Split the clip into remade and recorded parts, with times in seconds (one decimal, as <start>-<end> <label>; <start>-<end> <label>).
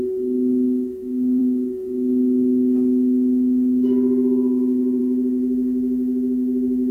0.0-6.9 remade